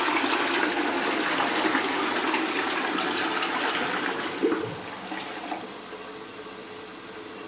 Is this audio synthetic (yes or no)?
no